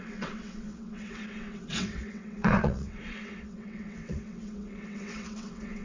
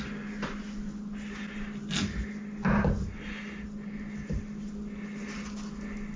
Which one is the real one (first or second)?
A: second